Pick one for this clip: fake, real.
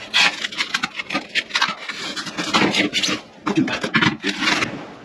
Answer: real